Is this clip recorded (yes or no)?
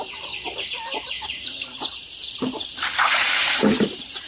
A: no